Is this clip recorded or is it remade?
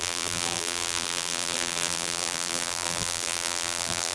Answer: remade